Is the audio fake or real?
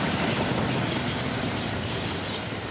real